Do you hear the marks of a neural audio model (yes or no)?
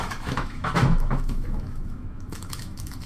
yes